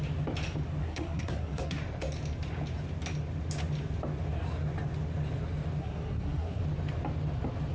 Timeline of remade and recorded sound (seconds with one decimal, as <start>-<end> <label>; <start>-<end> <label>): 0.0-0.8 recorded; 0.8-1.8 remade; 1.8-5.8 recorded; 5.8-6.6 remade; 6.6-7.7 recorded

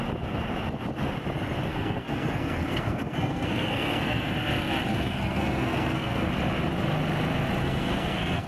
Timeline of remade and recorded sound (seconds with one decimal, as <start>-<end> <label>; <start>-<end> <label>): 0.0-1.7 recorded; 1.7-4.3 remade; 4.3-4.9 recorded; 4.9-6.3 remade; 6.3-7.6 recorded; 7.6-8.5 remade

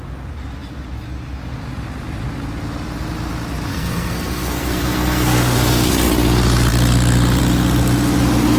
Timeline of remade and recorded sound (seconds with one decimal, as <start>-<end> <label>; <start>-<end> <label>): 0.0-3.7 recorded; 3.7-5.9 remade; 5.9-8.6 recorded

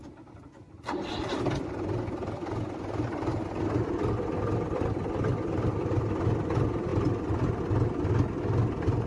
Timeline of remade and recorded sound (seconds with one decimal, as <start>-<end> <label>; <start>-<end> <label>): 0.0-9.1 recorded

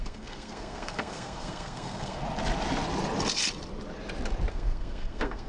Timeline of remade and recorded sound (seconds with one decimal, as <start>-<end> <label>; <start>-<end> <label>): 0.0-2.2 remade; 2.2-4.5 recorded; 4.5-5.5 remade

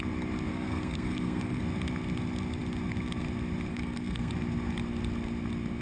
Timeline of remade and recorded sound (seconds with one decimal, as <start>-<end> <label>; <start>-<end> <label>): 0.0-0.5 recorded; 0.5-1.6 remade; 1.6-3.7 recorded; 3.7-4.3 remade; 4.3-5.8 recorded

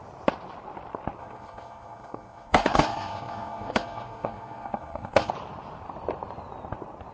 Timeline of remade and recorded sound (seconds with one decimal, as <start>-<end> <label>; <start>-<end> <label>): 0.0-1.2 recorded; 1.2-5.3 remade; 5.3-7.1 recorded